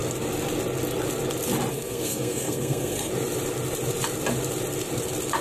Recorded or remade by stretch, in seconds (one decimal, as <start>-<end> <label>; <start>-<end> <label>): 0.0-1.7 recorded; 1.7-3.1 remade; 3.1-5.4 recorded